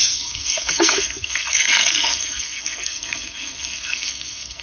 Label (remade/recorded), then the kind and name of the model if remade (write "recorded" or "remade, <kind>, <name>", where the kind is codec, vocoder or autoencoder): remade, codec, SNAC